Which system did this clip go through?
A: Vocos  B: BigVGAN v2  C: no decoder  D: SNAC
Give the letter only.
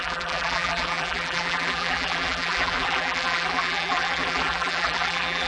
B